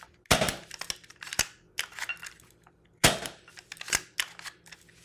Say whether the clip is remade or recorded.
recorded